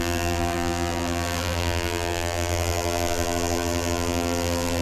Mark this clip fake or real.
fake